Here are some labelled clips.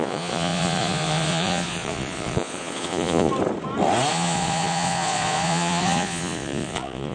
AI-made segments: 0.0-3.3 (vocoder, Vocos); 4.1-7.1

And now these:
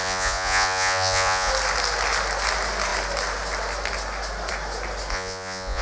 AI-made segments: 0.0-1.5 (vocoder, Vocos); 5.1-5.8

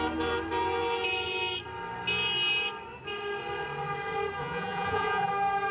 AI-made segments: 4.4-5.3 (vocoder, Vocos)

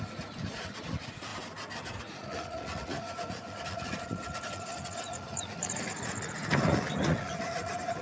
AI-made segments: 0.0-1.3 (vocoder, Vocos); 2.0-8.0

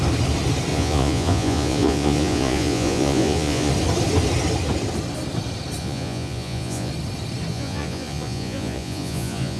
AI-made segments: 0.7-3.7 (vocoder, Vocos); 5.8-6.9; 7.5-9.6

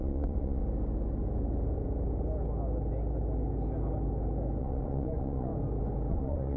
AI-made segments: 0.0-0.6 (vocoder, Vocos); 4.6-5.5; 6.1-6.6